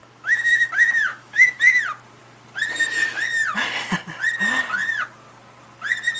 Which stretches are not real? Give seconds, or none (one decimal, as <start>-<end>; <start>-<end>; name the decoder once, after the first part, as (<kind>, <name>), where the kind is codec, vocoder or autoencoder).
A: 0.0-0.7 (autoencoder, DAC-VAE); 1.1-1.6